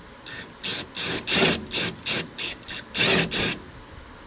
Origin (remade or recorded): recorded